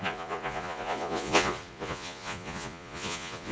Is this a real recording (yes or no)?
no